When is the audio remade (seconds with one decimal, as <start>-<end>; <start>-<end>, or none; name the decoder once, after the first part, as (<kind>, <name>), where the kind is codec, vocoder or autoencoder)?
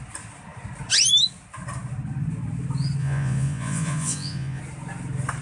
3.0-4.6 (vocoder, Vocos)